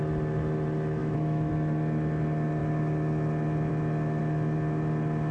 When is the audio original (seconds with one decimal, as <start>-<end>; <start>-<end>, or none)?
0.0-1.0; 1.5-5.3